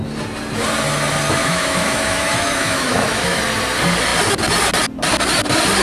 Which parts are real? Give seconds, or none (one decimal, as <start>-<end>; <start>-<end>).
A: 0.0-1.4; 3.4-5.8